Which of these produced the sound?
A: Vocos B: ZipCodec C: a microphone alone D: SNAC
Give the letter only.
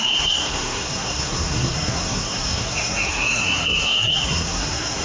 D